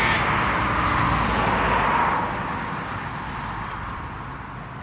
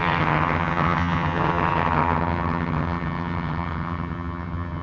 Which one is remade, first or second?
second